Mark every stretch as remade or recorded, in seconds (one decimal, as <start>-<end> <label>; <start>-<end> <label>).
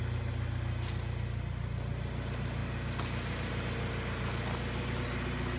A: 0.0-5.6 recorded